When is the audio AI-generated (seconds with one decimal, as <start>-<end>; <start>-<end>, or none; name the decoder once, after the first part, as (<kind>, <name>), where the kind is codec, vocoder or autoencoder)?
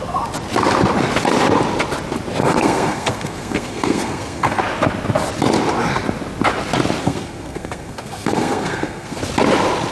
2.4-4.6 (codec, SNAC); 7.0-9.2